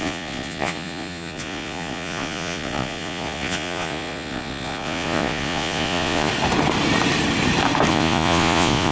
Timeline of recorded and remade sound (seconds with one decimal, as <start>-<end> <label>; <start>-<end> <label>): 0.0-6.3 remade; 6.3-7.9 recorded; 7.9-8.9 remade